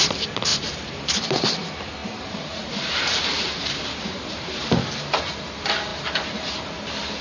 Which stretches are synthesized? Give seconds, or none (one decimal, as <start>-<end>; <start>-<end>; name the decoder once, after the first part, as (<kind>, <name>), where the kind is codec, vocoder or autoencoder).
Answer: 0.5-1.1 (vocoder, BigVGAN v2); 2.0-4.6